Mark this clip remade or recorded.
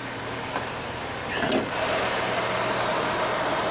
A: remade